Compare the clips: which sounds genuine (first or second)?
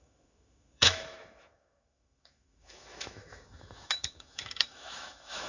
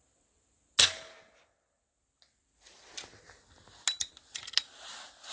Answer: second